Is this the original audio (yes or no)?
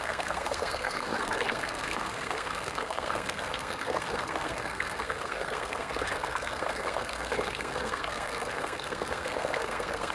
no